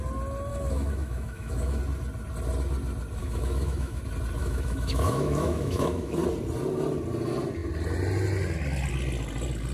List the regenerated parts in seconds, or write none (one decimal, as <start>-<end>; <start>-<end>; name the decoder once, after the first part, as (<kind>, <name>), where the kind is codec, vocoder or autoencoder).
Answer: 0.5-1.8 (autoencoder, DAC-VAE); 3.2-4.0; 4.4-6.2